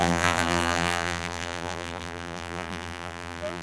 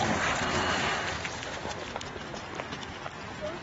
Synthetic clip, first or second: first